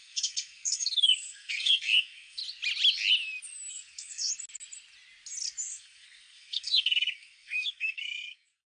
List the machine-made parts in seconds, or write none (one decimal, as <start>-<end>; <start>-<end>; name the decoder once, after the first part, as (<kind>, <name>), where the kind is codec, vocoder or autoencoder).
0.0-2.4 (codec, SNAC); 3.7-4.3; 5.7-8.7